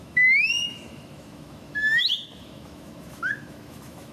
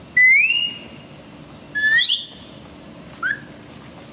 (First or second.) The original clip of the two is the second